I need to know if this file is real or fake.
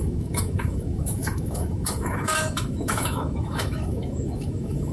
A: fake